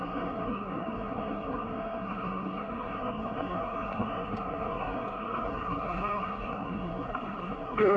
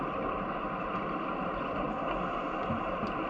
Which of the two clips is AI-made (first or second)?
first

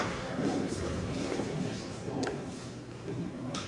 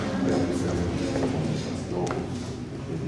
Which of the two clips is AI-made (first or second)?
first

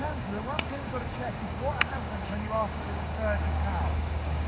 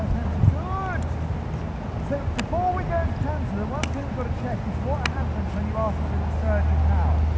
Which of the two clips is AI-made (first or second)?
first